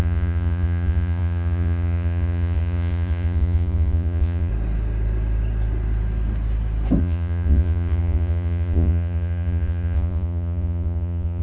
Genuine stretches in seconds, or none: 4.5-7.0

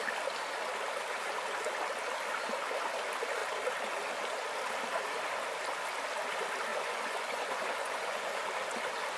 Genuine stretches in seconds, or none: 0.0-6.7; 8.4-9.2